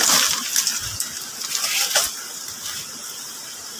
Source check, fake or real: real